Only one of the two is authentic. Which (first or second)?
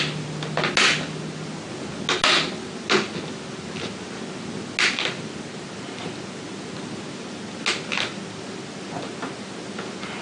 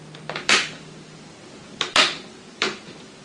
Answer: first